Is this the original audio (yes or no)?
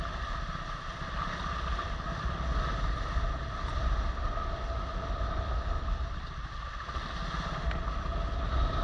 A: yes